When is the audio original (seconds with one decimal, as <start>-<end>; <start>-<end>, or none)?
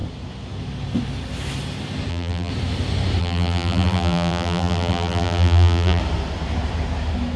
0.0-2.1; 2.5-3.2; 6.0-7.4